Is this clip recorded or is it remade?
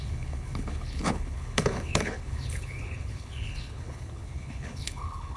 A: remade